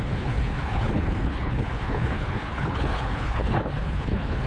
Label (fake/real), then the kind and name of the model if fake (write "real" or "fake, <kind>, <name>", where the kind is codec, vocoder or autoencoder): fake, codec, HILCodec